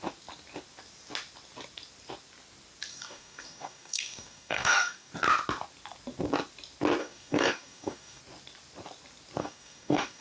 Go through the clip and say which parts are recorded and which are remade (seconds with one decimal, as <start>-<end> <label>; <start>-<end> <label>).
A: 0.0-2.9 recorded; 2.9-5.1 remade; 5.1-7.0 recorded; 7.0-8.2 remade; 8.2-9.4 recorded; 9.4-10.2 remade